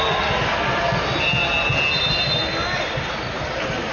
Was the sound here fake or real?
real